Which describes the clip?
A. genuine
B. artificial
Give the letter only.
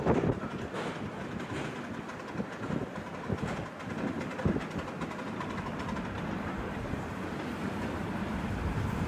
B